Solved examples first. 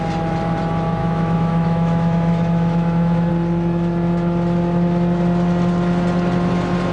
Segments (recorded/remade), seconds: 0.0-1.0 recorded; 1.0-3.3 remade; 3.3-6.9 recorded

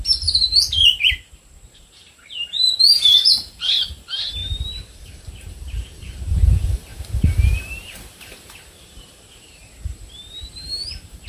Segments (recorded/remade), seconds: 0.0-11.3 remade

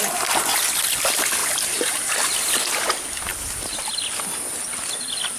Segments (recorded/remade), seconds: 0.0-1.4 recorded; 1.4-2.1 remade; 2.1-3.3 recorded; 3.3-3.9 remade; 3.9-5.4 recorded